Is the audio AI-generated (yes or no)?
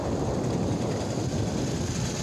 no